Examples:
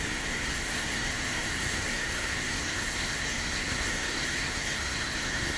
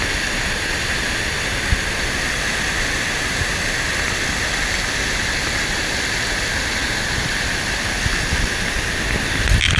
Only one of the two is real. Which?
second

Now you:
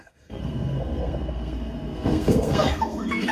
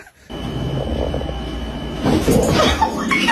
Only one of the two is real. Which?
second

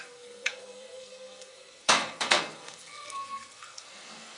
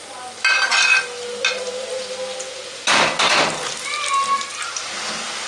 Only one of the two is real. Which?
second